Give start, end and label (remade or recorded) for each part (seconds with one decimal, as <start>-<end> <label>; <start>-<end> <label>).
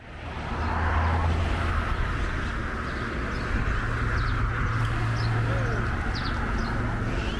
0.0-7.4 recorded